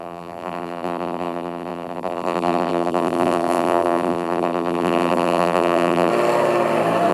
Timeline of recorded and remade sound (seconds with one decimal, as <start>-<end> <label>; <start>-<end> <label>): 0.0-6.1 remade; 6.1-7.1 recorded